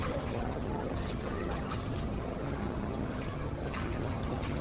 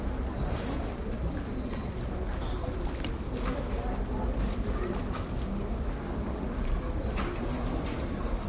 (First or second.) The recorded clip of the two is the second